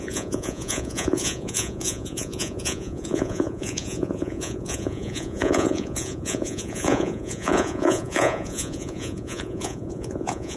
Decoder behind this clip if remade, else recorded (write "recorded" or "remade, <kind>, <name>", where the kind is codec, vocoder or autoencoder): remade, vocoder, Vocos